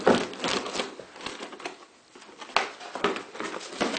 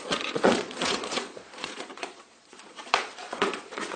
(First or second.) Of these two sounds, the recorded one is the first